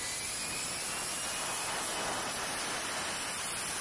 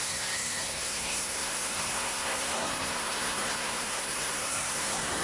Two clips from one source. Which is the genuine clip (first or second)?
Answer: first